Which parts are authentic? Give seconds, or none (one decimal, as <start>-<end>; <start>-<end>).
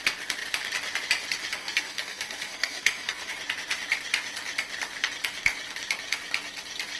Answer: 0.0-1.6; 3.3-7.0